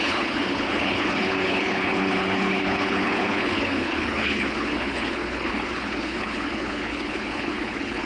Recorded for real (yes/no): no